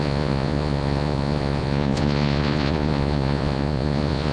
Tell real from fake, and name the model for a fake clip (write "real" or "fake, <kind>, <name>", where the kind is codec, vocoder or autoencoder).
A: fake, vocoder, Vocos